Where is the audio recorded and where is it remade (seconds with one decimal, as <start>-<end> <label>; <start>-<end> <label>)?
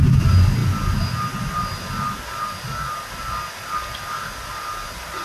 0.0-5.2 recorded